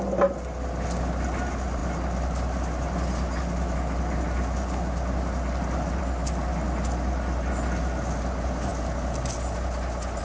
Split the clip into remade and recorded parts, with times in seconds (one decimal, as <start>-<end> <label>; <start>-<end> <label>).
0.0-10.2 recorded